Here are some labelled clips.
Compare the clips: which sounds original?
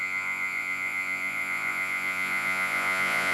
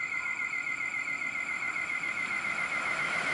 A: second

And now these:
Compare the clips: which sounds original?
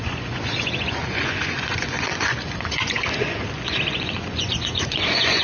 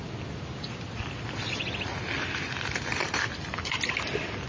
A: second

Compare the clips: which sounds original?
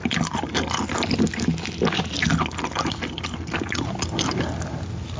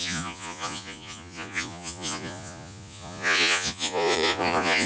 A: first